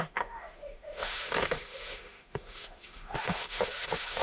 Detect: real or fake fake